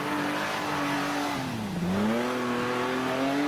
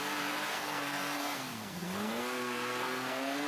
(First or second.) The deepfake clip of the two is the second